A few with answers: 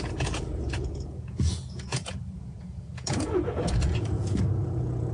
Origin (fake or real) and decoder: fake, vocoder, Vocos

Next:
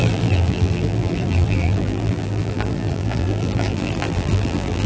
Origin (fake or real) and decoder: fake, vocoder, BigVGAN v2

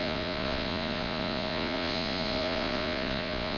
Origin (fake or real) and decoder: fake, vocoder, Vocos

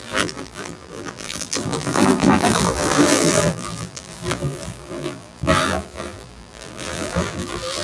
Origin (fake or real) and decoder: fake, vocoder, BigVGAN v2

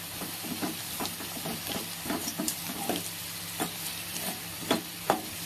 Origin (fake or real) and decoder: fake, vocoder, BigVGAN v2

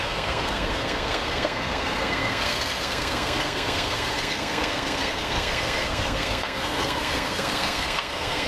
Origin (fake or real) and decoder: fake, codec, SNAC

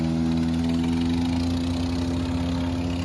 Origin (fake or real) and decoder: real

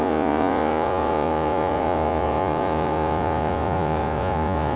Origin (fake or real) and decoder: fake, vocoder, Vocos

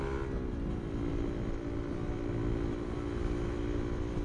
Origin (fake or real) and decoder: real